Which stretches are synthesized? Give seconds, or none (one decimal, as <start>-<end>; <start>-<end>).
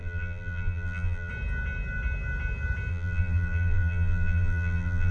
0.0-1.3; 2.9-5.1